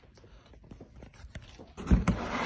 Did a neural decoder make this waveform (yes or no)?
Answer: yes